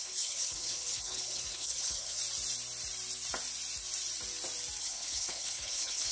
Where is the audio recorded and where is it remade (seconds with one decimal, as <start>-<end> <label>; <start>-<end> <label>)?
0.0-2.2 remade; 2.2-4.8 recorded; 4.8-6.1 remade